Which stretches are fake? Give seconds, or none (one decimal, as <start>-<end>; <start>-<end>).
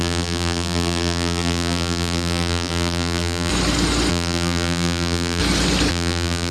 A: 0.0-3.5; 4.1-5.4; 5.9-6.5